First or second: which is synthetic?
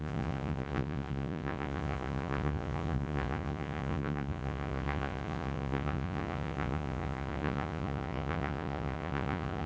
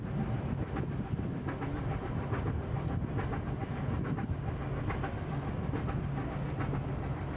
first